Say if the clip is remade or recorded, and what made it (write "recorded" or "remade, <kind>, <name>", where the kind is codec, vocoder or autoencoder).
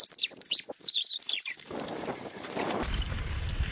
remade, vocoder, BigVGAN v2